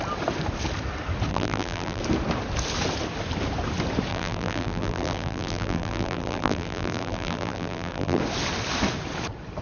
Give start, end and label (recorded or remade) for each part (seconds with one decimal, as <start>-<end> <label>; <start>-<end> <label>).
0.0-1.3 recorded; 1.3-2.0 remade; 2.0-4.1 recorded; 4.1-8.2 remade; 8.2-9.6 recorded